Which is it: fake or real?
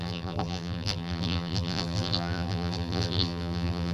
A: fake